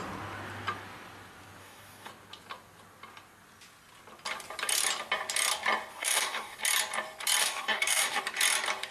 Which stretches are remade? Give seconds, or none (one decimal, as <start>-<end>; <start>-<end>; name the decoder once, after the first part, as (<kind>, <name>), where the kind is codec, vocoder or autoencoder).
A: 1.6-2.1 (codec, DAC); 5.9-6.6; 7.4-8.2